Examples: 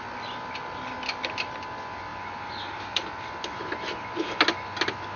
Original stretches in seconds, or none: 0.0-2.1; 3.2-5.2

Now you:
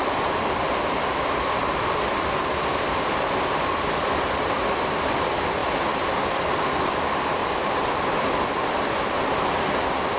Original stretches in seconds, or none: 5.6-6.4; 7.4-8.1; 8.6-9.4

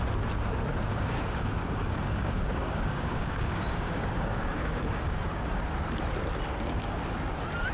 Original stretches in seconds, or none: 0.0-0.9; 5.5-6.5; 7.0-7.7